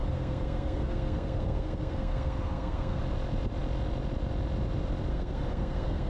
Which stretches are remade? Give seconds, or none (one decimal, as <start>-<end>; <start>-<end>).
0.0-3.0; 5.1-6.1